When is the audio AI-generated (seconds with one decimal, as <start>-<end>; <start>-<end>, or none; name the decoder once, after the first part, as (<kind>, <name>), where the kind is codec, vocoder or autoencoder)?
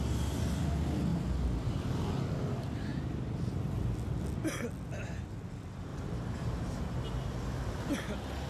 1.1-2.1 (vocoder, BigVGAN v2); 5.9-7.4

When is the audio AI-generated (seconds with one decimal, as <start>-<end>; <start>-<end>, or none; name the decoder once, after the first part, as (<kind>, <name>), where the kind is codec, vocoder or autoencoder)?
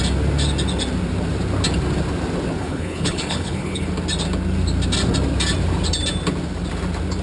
2.6-3.9 (codec, HILCodec)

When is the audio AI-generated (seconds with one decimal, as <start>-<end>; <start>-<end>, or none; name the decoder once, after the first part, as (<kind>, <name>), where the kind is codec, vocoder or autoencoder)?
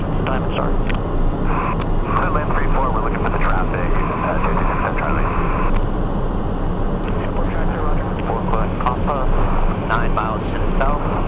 4.5-6.4 (vocoder, BigVGAN v2)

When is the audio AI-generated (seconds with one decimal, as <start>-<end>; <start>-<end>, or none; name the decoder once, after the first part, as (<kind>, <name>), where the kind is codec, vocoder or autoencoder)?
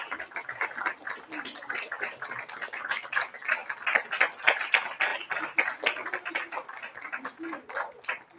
none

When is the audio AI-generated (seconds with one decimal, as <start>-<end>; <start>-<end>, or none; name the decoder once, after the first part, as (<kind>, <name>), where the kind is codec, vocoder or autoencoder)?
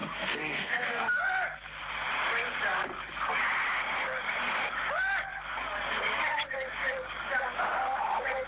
0.0-1.2 (codec, SNAC)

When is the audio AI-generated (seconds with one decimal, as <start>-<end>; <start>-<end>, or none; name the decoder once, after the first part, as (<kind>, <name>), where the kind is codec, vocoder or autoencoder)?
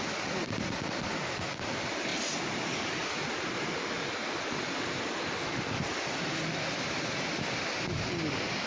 none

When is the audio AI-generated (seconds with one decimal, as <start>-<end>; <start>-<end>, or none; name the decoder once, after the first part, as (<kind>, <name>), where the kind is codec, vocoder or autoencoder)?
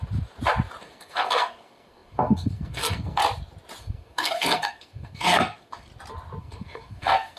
0.8-3.2 (codec, SNAC); 3.8-5.9; 6.4-7.4